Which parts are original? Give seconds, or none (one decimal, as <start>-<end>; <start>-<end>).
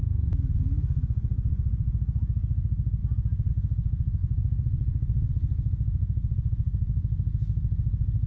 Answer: 0.0-4.2; 5.3-8.3